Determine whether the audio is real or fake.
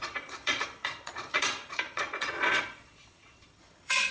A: fake